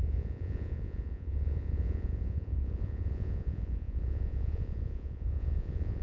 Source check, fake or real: fake